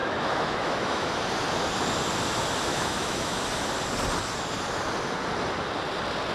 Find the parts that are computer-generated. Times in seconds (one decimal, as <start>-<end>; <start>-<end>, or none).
0.0-1.1; 2.7-3.4